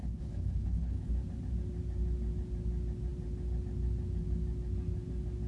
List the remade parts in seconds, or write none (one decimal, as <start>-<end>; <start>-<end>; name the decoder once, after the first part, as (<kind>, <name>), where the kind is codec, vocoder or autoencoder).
0.0-1.1 (codec, HILCodec)